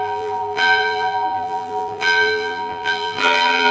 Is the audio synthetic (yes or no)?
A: yes